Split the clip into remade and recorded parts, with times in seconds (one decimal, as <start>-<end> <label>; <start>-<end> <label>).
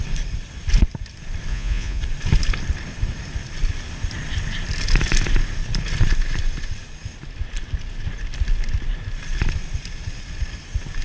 0.0-1.5 recorded; 1.5-2.0 remade; 2.0-11.0 recorded